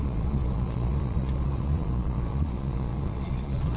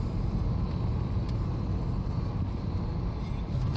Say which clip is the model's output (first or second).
first